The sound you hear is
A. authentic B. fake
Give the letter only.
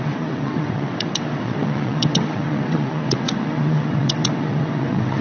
B